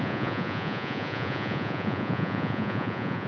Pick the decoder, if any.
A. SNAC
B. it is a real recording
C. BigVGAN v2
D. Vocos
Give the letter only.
D